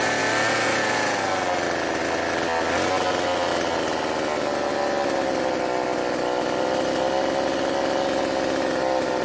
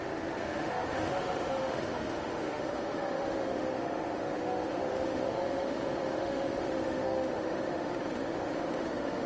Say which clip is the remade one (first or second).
second